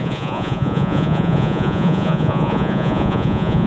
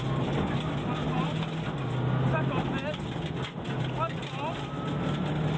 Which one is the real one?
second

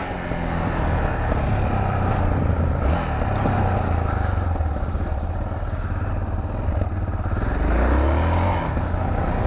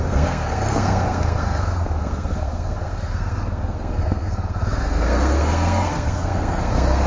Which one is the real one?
first